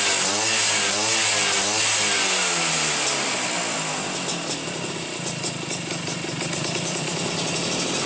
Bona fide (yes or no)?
yes